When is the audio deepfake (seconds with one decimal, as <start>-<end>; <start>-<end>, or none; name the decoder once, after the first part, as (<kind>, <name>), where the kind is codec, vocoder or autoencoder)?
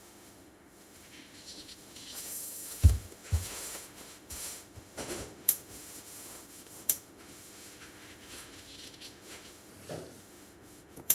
0.0-9.7 (autoencoder, DAC-VAE); 10.2-11.1